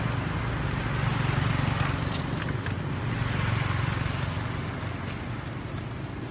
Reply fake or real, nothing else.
real